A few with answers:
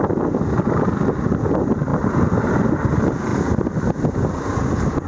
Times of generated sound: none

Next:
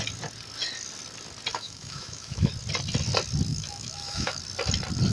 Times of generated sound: 1.5-2.5 (autoencoder, DAC-VAE); 3.5-4.4